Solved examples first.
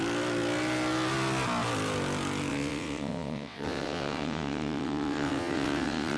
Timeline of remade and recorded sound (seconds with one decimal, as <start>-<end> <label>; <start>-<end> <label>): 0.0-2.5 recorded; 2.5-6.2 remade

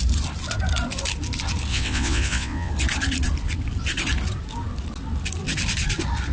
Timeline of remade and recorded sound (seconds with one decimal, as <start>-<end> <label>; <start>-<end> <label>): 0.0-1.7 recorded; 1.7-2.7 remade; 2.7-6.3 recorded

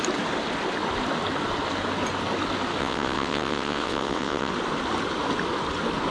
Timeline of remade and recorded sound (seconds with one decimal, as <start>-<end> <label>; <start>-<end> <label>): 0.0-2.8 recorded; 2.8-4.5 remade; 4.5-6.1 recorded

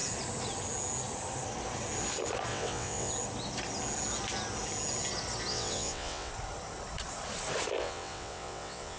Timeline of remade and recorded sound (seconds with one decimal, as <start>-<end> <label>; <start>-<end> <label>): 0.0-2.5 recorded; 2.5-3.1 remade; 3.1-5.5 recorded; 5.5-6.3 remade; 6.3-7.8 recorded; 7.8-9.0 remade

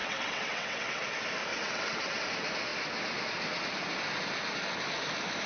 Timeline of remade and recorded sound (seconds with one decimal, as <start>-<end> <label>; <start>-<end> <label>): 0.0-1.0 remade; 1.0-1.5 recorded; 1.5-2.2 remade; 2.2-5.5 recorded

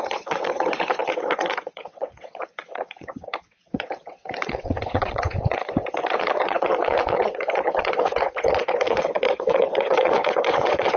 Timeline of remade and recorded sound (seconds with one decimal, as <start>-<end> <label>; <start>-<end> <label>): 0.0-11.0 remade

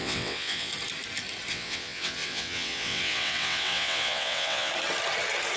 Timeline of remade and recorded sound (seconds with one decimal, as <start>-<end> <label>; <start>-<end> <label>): 0.0-0.7 remade; 0.7-1.5 recorded; 1.5-4.7 remade; 4.7-5.6 recorded

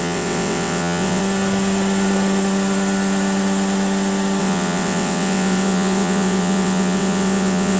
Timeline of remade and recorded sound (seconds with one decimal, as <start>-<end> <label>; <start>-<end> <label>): 0.0-1.2 remade; 1.2-4.4 recorded; 4.4-7.8 remade